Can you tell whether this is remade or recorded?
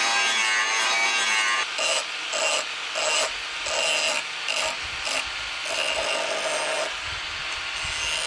recorded